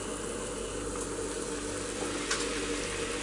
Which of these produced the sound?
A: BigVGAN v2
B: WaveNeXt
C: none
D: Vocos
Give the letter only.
C